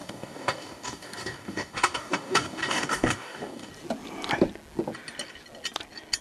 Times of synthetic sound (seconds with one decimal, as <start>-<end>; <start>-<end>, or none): 0.0-3.7